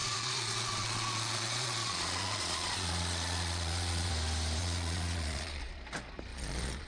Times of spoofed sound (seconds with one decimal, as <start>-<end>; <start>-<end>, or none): 0.0-4.1; 4.6-5.7; 6.3-6.9